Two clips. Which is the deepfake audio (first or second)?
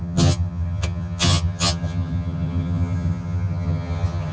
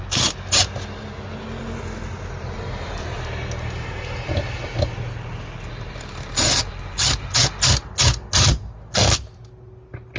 first